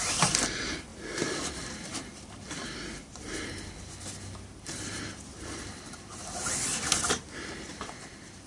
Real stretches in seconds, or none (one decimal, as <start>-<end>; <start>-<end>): 6.1-7.7